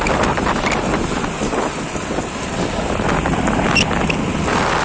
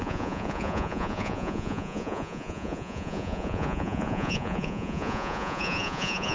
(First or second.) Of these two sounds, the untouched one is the first